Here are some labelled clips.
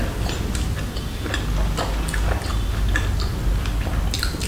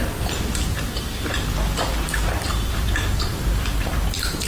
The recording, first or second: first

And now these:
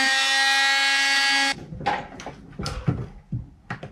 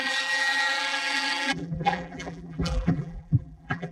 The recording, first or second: first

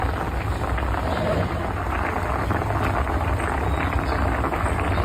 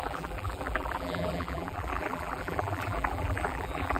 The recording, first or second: first